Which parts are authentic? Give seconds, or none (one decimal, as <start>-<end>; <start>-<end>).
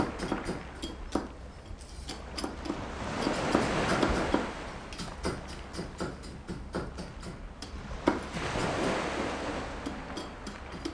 0.0-10.9